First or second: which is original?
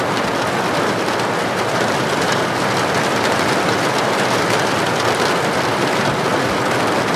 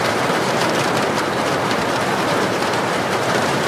first